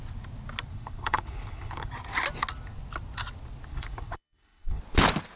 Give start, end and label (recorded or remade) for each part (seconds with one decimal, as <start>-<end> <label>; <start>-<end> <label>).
0.0-0.7 recorded; 0.7-1.9 remade; 1.9-3.7 recorded; 3.7-4.8 remade; 4.8-5.4 recorded